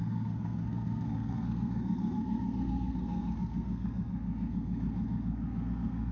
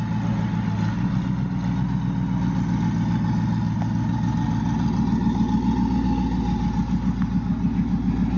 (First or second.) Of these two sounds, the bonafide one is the second